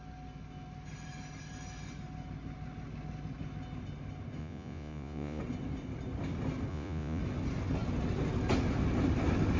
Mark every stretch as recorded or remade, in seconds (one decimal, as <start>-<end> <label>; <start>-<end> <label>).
0.0-4.4 recorded; 4.4-5.4 remade; 5.4-6.7 recorded; 6.7-7.2 remade; 7.2-9.6 recorded